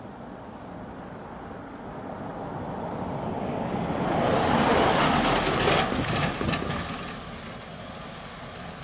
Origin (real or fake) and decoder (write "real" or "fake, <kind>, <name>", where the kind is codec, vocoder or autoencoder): real